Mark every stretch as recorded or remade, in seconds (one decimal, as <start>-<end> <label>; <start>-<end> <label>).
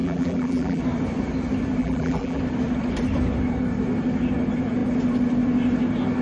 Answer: 0.0-0.8 remade; 0.8-1.8 recorded; 1.8-2.4 remade; 2.4-6.2 recorded